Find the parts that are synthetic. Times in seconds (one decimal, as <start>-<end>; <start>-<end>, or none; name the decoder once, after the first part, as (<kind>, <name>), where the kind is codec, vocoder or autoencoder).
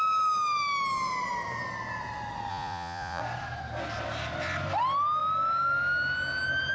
2.5-3.2 (vocoder, Vocos)